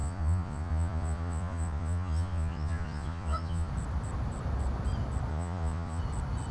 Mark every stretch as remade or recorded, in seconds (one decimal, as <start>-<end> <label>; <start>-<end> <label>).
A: 0.0-3.7 remade; 3.7-5.3 recorded; 5.3-6.0 remade; 6.0-6.5 recorded